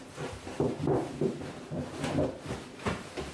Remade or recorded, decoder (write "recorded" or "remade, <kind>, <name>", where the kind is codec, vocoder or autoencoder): remade, vocoder, BigVGAN v2